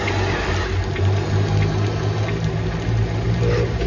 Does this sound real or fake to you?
real